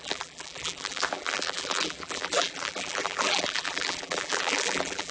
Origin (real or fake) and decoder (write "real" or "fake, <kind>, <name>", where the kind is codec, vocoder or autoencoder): fake, vocoder, BigVGAN v2